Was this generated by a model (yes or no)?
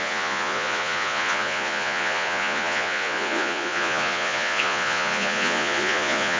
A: yes